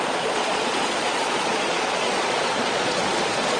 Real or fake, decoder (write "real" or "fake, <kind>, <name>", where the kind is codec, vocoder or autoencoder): fake, vocoder, Vocos